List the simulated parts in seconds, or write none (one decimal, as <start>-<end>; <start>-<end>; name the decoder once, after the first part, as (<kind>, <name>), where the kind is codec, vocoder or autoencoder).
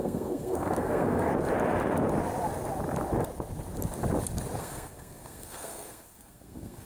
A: 0.0-1.3 (codec, SNAC); 4.6-6.9